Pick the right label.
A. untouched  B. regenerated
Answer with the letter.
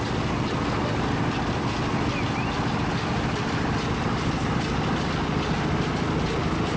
A